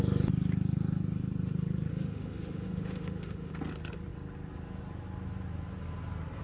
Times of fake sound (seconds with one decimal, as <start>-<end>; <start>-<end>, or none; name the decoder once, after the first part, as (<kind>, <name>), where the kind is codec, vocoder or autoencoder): 1.9-3.5 (autoencoder, DAC-VAE)